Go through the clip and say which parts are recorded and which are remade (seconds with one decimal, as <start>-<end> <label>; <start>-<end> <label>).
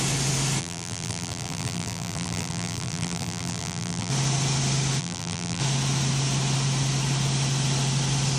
0.0-0.6 recorded; 0.6-4.1 remade; 4.1-5.0 recorded; 5.0-5.6 remade; 5.6-8.4 recorded